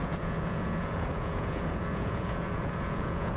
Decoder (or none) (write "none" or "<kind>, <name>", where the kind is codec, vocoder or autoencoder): vocoder, Vocos